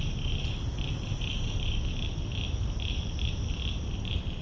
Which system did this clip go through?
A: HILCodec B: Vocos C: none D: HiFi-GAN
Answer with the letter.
C